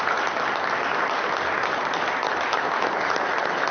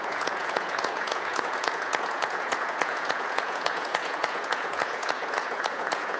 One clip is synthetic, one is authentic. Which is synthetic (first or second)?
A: second